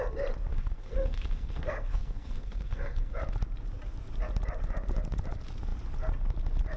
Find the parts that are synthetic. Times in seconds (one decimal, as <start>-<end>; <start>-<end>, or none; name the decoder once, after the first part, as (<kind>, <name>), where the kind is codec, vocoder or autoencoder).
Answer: 0.5-3.1 (codec, SNAC)